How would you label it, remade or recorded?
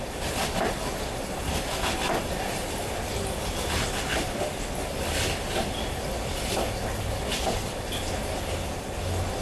recorded